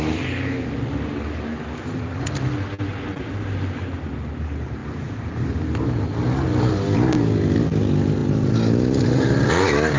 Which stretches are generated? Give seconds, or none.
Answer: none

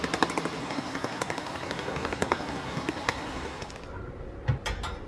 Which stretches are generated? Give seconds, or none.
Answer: 0.6-3.7 (codec, SNAC)

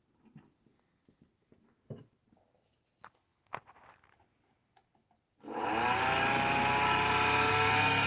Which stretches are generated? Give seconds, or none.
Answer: 7.5-8.1 (codec, SNAC)